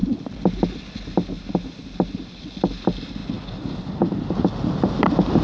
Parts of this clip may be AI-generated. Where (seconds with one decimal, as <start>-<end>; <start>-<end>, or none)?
none